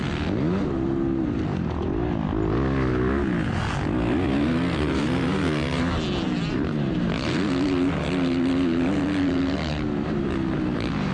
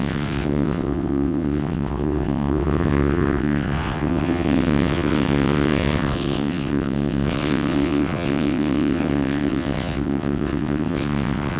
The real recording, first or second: first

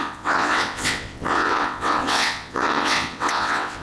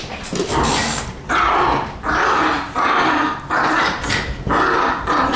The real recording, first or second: second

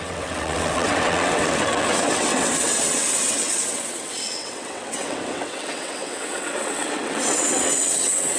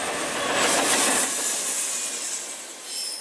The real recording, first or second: second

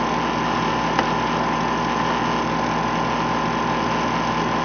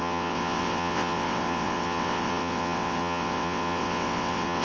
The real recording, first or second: first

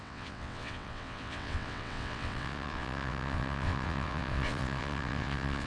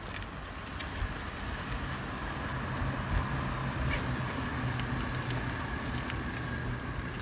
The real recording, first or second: second